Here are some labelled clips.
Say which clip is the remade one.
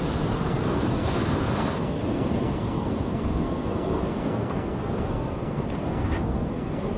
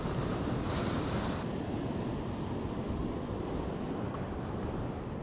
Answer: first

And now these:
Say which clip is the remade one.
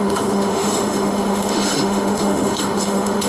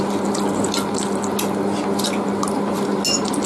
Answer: first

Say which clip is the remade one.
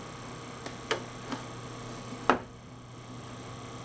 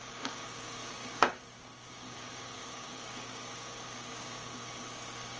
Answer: second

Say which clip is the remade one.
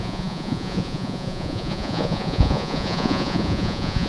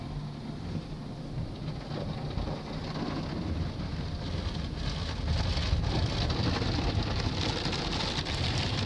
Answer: first